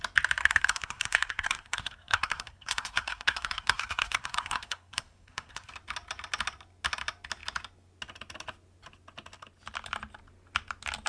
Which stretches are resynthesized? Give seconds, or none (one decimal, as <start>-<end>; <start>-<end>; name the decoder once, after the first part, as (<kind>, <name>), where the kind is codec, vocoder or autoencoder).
0.4-5.7 (codec, SNAC)